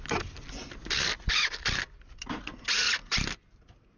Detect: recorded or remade recorded